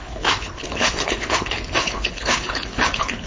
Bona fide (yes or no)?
no